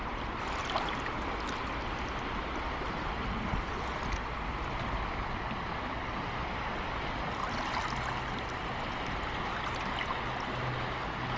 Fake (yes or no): no